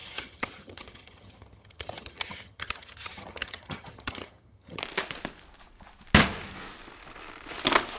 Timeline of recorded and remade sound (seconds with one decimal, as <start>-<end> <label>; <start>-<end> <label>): 0.0-4.8 remade; 4.8-8.0 recorded